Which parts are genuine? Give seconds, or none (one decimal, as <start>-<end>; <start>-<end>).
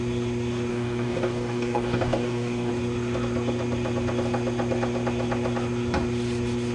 0.0-0.7; 2.7-6.7